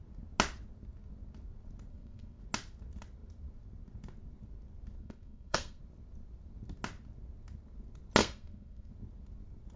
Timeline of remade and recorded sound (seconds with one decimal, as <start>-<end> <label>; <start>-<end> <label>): 0.0-1.9 recorded; 1.9-2.4 remade; 2.4-5.0 recorded; 5.0-5.8 remade; 5.8-8.2 recorded; 8.2-8.9 remade; 8.9-9.8 recorded